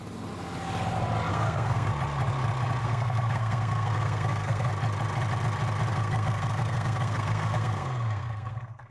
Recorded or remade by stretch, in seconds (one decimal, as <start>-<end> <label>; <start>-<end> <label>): 0.0-1.3 recorded; 1.3-1.9 remade; 1.9-2.8 recorded; 2.8-4.7 remade; 4.7-5.9 recorded; 5.9-8.9 remade